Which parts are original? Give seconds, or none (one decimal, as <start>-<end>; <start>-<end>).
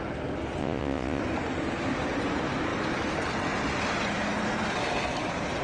0.0-0.6; 1.2-5.6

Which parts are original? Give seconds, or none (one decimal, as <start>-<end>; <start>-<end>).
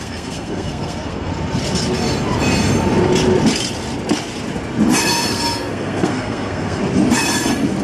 1.3-5.0; 6.8-7.8